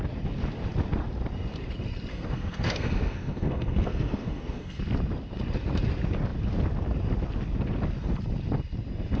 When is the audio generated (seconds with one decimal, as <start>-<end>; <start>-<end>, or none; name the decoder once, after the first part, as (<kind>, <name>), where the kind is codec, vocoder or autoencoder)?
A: 2.1-4.8 (codec, SNAC)